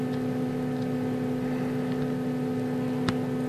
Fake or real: real